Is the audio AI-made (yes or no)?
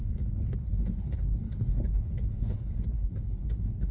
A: yes